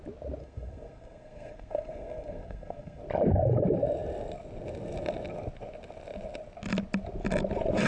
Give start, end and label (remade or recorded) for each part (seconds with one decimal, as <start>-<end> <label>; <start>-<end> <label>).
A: 0.0-0.4 recorded; 0.4-3.0 remade; 3.0-7.9 recorded